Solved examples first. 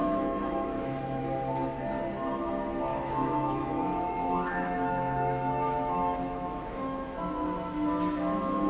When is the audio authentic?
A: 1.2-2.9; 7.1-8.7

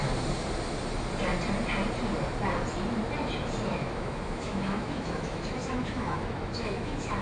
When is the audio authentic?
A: 0.0-3.7

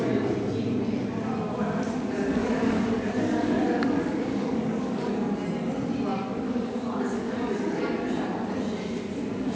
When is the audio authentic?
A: 0.0-2.4; 5.1-6.1; 7.8-9.6

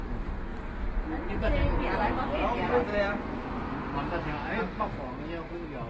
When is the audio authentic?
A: 0.0-2.9; 3.5-5.9

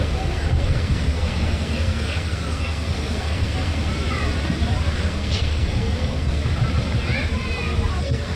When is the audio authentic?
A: 3.9-4.9; 6.4-8.0

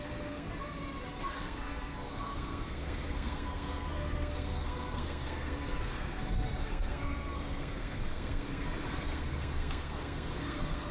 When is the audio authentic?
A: 0.6-1.2